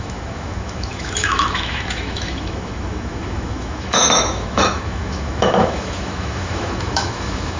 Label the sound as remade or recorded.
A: remade